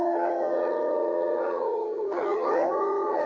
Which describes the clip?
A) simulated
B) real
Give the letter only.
A